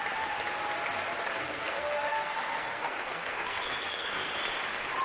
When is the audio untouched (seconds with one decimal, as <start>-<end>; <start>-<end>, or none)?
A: 0.0-1.4; 4.4-5.0